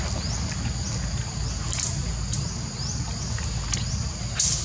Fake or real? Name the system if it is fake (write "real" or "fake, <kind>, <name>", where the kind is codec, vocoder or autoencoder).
real